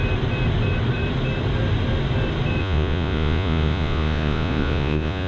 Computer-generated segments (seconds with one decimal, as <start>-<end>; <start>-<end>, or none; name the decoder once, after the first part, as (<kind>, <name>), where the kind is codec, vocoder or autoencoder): 2.6-5.3 (vocoder, Vocos)

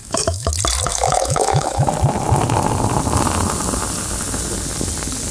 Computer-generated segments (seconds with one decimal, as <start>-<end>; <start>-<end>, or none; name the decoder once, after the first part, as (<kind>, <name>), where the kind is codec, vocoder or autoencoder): 0.0-0.5 (autoencoder, DAC-VAE); 0.9-1.9

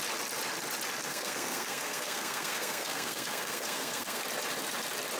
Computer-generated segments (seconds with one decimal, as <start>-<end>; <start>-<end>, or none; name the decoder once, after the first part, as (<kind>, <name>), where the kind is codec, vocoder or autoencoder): 1.1-4.2 (codec, SNAC)

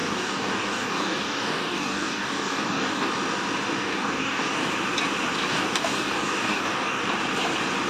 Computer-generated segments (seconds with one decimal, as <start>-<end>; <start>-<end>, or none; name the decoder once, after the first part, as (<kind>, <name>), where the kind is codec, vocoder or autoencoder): 0.0-3.1 (codec, DAC); 3.8-4.7; 5.5-7.0

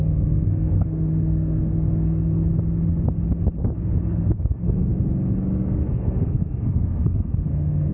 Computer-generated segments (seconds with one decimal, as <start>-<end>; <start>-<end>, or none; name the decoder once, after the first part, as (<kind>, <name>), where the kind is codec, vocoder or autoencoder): 0.0-2.5 (codec, SNAC); 4.0-4.9; 5.9-7.9

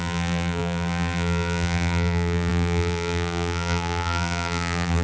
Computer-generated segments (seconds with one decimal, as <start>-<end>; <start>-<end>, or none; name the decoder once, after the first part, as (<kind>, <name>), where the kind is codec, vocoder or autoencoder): 0.0-5.0 (vocoder, BigVGAN v2)